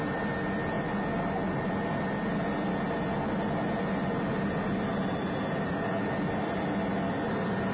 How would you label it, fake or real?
real